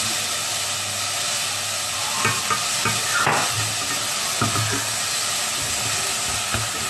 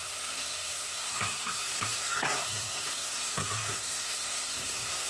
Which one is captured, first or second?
first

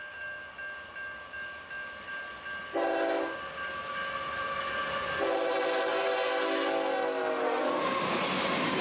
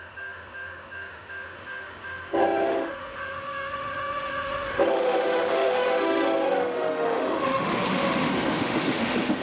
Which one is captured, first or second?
first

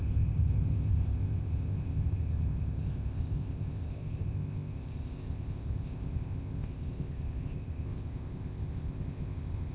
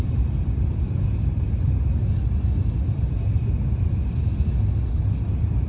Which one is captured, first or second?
second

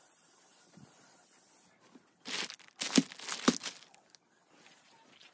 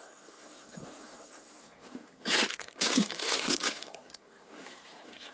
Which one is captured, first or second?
first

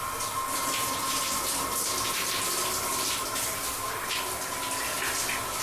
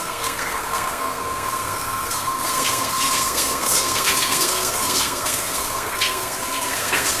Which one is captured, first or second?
first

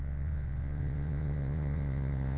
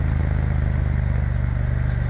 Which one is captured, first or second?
second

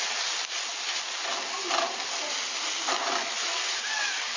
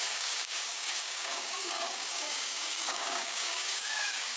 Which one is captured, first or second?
first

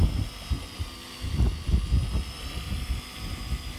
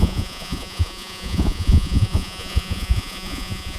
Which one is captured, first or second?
first